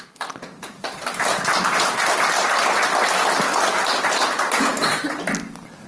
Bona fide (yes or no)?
yes